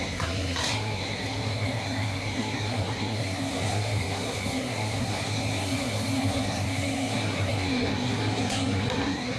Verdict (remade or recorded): remade